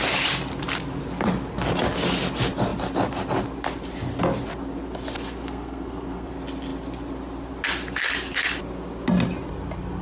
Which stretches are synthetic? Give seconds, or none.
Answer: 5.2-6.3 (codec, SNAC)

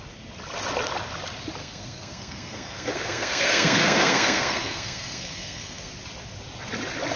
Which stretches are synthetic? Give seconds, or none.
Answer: 1.6-5.9 (codec, SNAC)

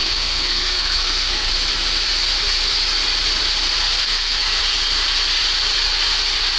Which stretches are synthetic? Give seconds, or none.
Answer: 0.0-1.5 (codec, SNAC); 4.0-4.6

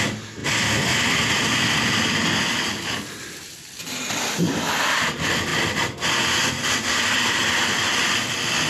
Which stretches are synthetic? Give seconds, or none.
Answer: none

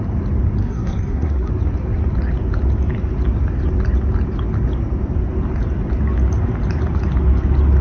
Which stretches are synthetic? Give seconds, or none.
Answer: 0.6-1.5 (codec, SNAC)

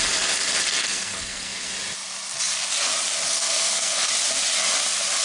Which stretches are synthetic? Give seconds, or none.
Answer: 0.8-1.7 (codec, SNAC); 3.3-4.1

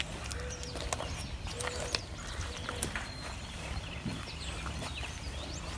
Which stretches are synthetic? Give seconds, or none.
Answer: none